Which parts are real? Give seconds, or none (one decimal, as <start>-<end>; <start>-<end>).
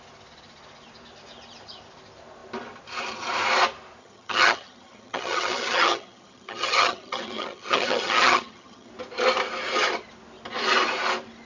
0.0-4.0; 8.9-11.5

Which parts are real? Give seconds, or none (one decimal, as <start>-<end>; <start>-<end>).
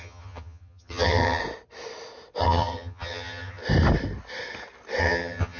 1.4-2.4; 3.6-5.0